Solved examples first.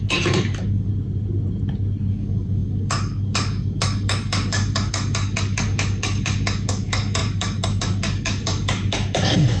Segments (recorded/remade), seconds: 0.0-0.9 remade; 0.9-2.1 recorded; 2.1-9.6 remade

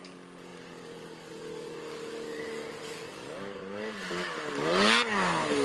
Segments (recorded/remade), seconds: 0.0-5.6 remade

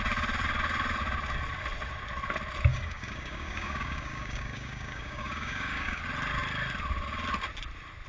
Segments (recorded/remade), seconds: 0.0-2.7 recorded; 2.7-6.0 remade; 6.0-8.1 recorded

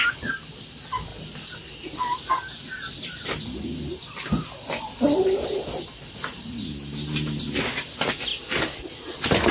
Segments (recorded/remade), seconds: 0.0-9.5 recorded